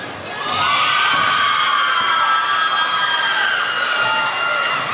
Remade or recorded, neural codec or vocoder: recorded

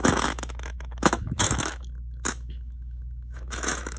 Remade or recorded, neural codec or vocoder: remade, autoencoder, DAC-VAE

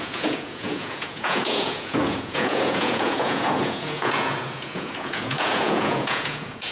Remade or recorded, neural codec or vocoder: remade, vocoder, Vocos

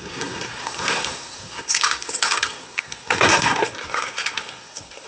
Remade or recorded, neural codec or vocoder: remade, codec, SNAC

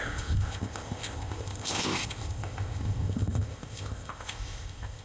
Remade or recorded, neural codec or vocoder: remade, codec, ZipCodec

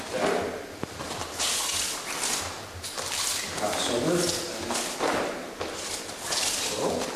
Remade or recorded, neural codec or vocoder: recorded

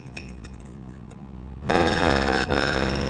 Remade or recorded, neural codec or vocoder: remade, vocoder, Vocos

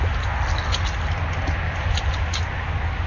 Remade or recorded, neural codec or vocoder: recorded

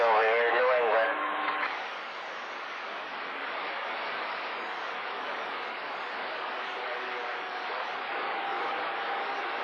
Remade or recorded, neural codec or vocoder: remade, codec, DAC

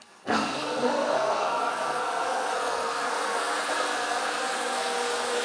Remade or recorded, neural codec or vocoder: remade, codec, SNAC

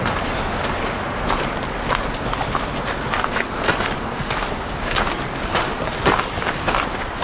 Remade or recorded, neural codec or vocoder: recorded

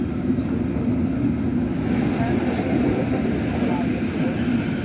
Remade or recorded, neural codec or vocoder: recorded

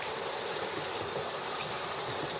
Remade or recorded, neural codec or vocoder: remade, vocoder, BigVGAN v2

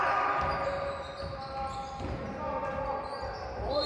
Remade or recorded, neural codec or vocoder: recorded